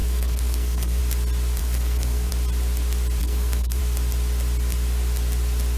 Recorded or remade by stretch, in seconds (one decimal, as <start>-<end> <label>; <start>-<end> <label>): 0.0-1.0 remade; 1.0-1.6 recorded; 1.6-2.3 remade; 2.3-3.2 recorded; 3.2-3.8 remade; 3.8-5.8 recorded